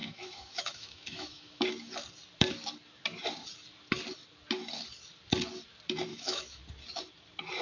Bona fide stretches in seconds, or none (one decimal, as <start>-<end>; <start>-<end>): 1.6-6.1; 6.6-7.6